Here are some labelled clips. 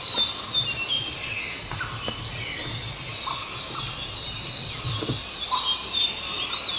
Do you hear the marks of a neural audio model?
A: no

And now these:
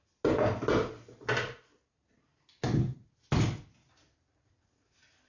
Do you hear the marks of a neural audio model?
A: no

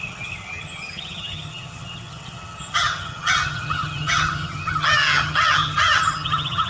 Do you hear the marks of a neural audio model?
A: yes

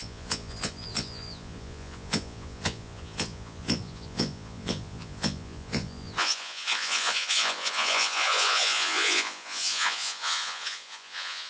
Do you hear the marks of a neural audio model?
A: yes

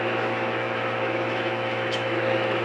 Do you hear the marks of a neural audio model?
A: yes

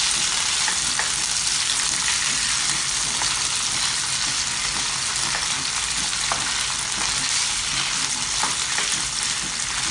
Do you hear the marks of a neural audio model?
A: no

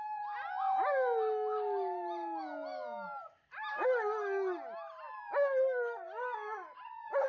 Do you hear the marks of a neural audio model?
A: no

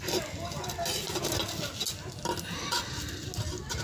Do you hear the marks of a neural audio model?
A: no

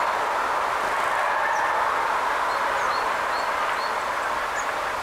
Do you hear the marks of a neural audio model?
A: no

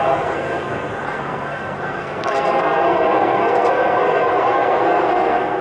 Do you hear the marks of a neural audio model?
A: yes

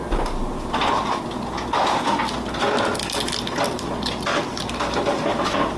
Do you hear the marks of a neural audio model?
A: no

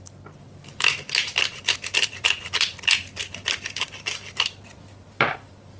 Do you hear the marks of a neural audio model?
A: no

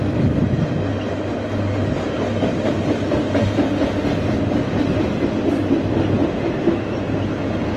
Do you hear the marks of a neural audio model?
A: no